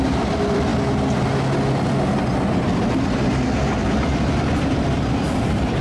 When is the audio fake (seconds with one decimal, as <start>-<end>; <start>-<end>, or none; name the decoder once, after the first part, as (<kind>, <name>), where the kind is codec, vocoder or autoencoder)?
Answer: 0.0-0.7 (vocoder, BigVGAN v2); 2.0-5.8